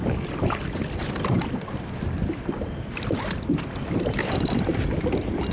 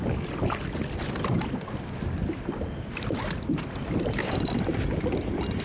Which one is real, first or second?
second